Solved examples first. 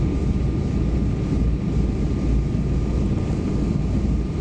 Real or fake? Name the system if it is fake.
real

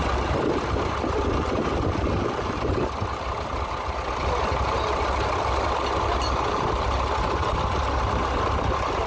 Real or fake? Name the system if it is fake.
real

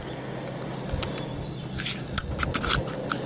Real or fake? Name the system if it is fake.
real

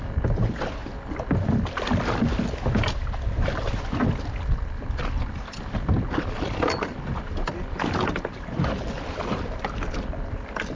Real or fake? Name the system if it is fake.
real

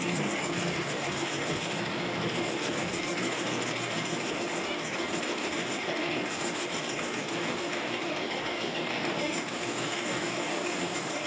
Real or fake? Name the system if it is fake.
fake, codec, DAC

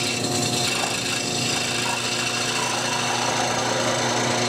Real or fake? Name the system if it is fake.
real